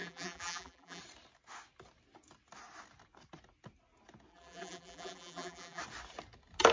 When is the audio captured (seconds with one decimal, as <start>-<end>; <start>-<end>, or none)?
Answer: 1.0-4.3; 5.8-6.7